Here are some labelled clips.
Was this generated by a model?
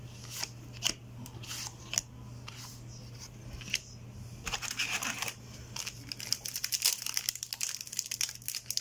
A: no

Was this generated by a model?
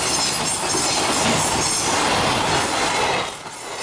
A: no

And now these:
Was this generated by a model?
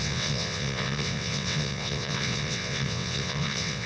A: yes